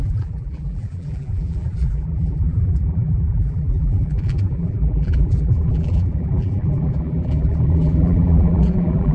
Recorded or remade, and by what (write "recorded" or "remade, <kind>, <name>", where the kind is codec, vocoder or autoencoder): remade, vocoder, BigVGAN v2